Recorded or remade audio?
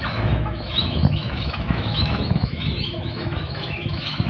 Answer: remade